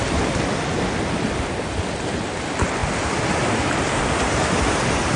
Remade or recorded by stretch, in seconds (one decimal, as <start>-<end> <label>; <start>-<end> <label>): 0.0-5.2 recorded

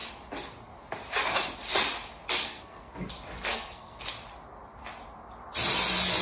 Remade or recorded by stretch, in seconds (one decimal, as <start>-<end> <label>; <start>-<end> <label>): 0.0-2.4 recorded; 2.4-3.1 remade; 3.1-3.5 recorded; 3.5-4.0 remade; 4.0-6.2 recorded